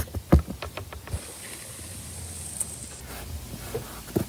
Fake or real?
real